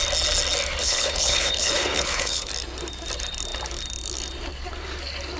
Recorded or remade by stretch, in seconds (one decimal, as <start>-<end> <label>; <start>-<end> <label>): 0.0-0.8 recorded; 0.8-2.5 remade; 2.5-5.4 recorded